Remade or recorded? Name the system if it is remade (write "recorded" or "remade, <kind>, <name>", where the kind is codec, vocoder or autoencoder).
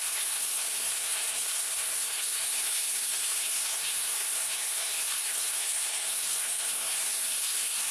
remade, codec, SNAC